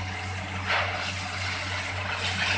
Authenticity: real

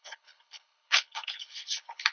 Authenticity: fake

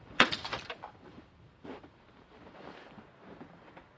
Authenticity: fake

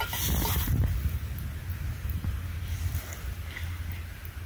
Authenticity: real